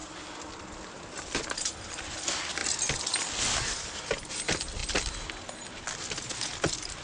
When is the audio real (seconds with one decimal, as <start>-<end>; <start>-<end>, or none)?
0.0-7.0